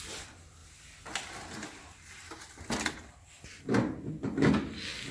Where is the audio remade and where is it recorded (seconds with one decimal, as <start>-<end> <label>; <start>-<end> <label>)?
0.0-5.1 recorded